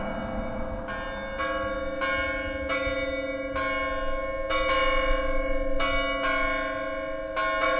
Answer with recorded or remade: recorded